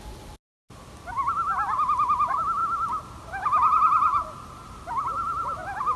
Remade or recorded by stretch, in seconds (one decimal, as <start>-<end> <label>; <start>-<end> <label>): 0.0-6.0 recorded